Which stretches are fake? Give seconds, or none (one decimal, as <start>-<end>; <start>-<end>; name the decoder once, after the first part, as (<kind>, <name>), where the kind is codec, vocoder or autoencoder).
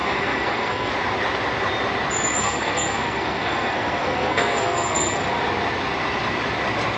0.0-0.9 (codec, SNAC); 2.4-5.2